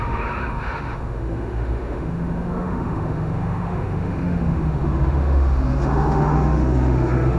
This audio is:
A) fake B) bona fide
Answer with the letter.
A